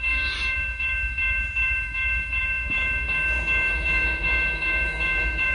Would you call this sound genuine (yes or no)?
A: no